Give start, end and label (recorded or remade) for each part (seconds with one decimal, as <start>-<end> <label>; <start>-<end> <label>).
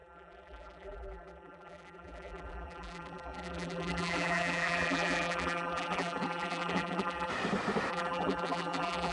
0.0-7.3 remade; 7.3-7.9 recorded; 7.9-9.1 remade